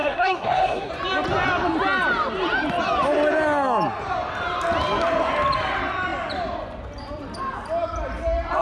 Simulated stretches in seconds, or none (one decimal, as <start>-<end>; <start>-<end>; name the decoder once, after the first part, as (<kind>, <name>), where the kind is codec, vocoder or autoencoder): 0.0-0.9 (codec, SNAC)